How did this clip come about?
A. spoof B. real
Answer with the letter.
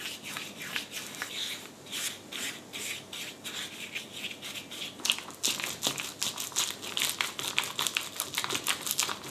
B